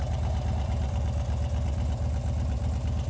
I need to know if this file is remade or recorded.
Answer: recorded